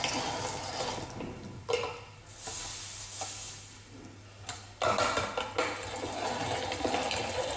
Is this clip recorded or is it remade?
recorded